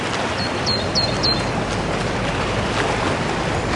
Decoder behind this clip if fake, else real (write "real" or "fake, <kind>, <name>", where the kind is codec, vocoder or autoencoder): real